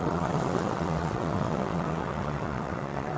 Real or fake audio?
fake